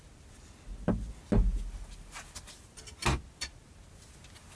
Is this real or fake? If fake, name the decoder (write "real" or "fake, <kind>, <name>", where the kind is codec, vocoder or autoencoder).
real